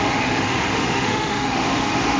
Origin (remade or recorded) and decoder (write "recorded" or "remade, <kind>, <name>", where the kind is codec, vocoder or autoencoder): remade, autoencoder, DAC-VAE